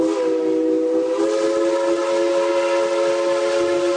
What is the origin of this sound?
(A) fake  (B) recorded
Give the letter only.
B